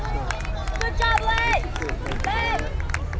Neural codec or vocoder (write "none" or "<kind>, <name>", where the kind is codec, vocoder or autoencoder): none